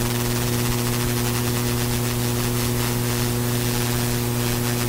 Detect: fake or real real